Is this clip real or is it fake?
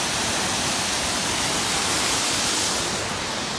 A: real